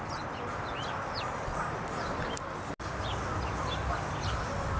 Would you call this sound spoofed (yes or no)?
no